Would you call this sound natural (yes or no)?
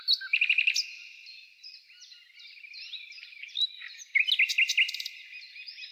yes